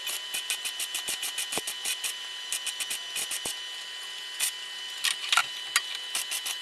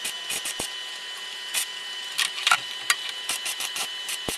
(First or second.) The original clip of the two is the first